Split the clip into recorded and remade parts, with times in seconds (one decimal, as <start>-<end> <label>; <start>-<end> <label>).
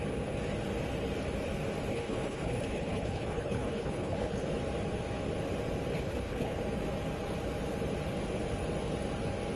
0.0-1.9 recorded; 1.9-4.5 remade; 4.5-5.9 recorded; 5.9-6.6 remade; 6.6-9.6 recorded